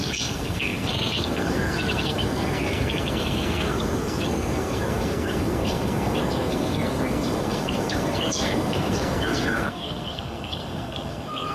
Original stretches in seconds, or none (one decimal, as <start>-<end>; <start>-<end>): none